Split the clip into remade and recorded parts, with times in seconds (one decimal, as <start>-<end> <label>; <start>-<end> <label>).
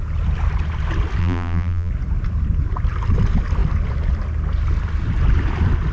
0.0-1.2 recorded; 1.2-1.9 remade; 1.9-5.9 recorded